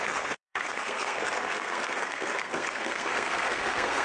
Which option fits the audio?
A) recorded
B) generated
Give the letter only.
B